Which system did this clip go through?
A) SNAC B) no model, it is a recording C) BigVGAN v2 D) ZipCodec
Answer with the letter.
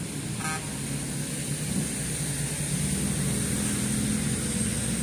B